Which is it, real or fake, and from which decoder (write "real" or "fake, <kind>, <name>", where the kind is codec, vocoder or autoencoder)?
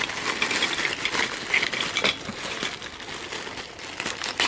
real